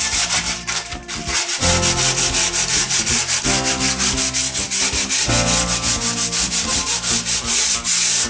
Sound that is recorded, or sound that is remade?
recorded